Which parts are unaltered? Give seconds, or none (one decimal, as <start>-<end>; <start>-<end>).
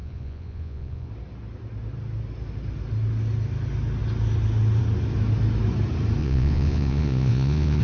1.1-6.2